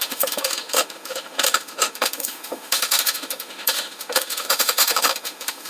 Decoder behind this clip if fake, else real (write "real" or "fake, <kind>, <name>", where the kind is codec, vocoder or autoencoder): fake, autoencoder, DAC-VAE